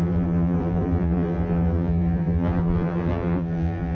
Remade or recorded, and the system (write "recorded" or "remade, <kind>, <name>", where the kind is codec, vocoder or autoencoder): remade, vocoder, BigVGAN v2